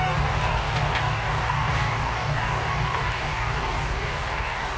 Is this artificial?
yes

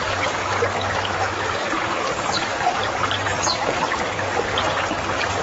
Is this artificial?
yes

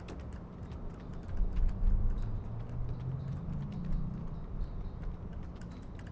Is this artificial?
no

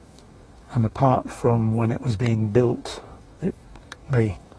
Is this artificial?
yes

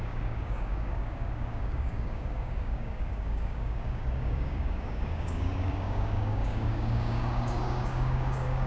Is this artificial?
yes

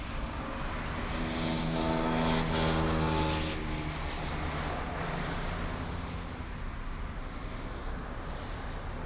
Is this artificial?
no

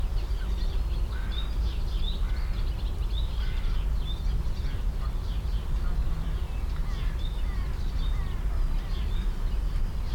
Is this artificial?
no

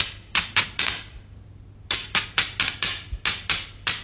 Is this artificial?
no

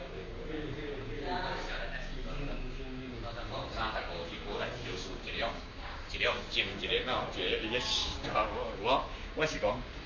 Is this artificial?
yes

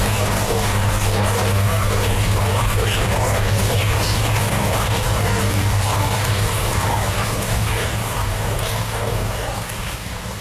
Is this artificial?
yes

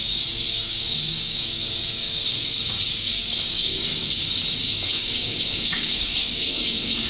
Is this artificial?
yes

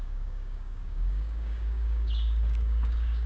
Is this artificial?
yes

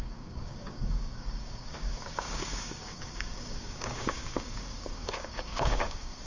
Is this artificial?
yes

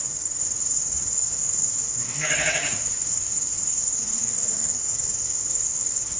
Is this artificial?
yes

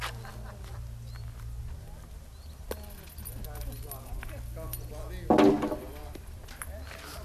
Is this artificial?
no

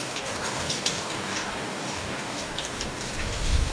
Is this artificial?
yes